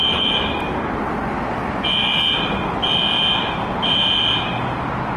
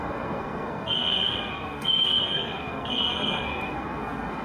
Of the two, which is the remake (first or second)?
second